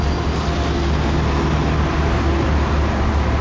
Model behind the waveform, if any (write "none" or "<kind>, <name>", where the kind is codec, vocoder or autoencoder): none